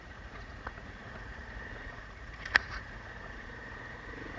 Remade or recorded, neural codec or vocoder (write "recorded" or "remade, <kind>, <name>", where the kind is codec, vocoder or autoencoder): remade, vocoder, Vocos